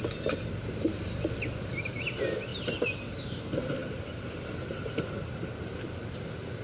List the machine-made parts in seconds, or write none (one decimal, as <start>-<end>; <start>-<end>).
2.5-3.4; 3.8-5.4